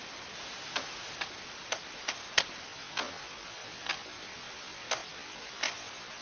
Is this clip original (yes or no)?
yes